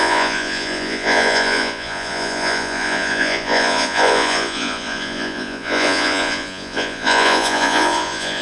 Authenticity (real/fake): fake